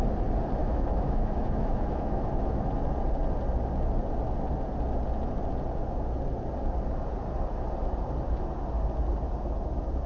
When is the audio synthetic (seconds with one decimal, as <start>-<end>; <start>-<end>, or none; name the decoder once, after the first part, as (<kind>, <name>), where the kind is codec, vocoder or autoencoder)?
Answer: 0.6-2.7 (autoencoder, DAC-VAE)